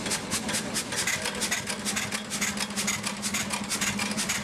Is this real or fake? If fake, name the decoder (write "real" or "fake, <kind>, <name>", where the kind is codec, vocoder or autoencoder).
real